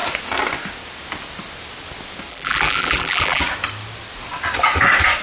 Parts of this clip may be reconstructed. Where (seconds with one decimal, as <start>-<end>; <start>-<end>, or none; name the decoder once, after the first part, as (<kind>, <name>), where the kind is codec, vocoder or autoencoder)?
2.3-3.4 (vocoder, BigVGAN v2)